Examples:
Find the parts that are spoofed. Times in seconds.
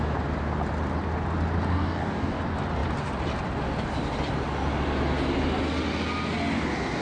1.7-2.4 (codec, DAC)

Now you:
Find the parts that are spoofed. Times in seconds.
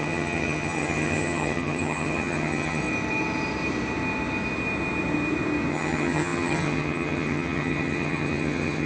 0.0-2.8 (vocoder, HiFi-GAN); 5.7-8.9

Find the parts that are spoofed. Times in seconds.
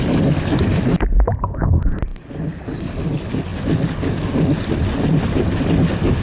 none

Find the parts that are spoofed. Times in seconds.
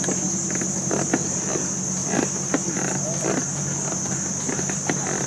2.0-5.3 (vocoder, BigVGAN v2)